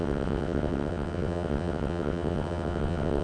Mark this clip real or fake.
fake